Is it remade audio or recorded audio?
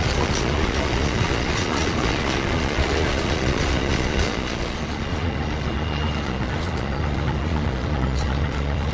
remade